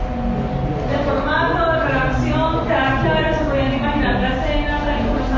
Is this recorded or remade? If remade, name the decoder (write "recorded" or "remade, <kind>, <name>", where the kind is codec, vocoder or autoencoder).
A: recorded